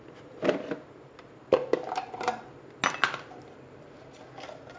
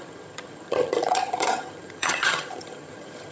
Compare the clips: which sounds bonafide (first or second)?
first